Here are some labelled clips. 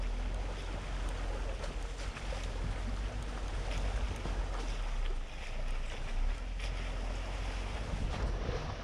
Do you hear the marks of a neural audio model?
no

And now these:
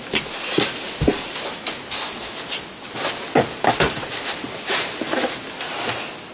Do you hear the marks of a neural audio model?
no